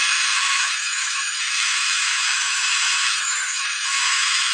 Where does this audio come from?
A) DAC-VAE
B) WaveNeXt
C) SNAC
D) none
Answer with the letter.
A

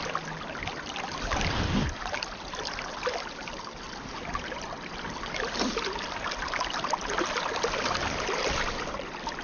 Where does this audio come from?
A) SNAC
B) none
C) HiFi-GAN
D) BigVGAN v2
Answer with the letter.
B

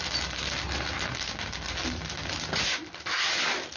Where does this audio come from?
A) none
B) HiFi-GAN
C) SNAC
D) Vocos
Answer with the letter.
A